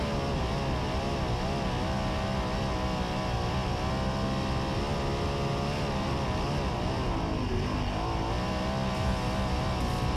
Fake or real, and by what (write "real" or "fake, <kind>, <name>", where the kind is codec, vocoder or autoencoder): real